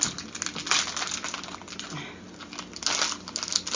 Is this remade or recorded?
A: recorded